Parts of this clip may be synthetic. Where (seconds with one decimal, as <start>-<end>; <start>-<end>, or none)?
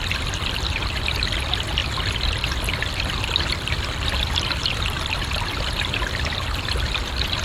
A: 1.8-6.2